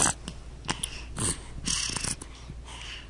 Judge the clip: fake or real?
real